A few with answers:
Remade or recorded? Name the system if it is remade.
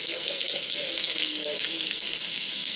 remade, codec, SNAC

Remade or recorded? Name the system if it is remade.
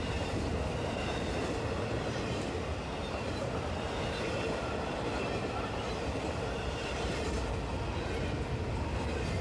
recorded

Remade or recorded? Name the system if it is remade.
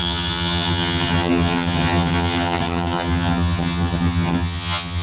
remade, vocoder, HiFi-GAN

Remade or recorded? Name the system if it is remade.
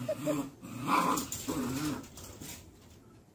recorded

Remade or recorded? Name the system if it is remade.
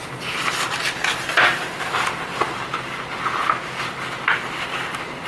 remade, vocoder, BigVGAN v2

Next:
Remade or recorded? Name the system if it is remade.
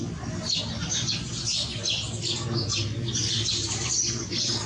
recorded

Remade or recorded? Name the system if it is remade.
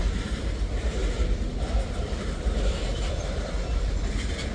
remade, vocoder, BigVGAN v2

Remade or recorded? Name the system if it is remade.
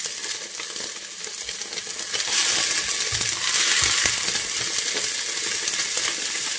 recorded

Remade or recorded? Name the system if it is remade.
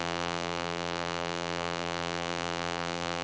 remade, vocoder, BigVGAN v2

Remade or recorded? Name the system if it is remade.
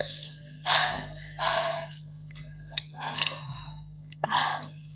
remade, codec, SNAC